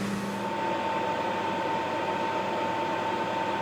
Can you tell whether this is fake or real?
real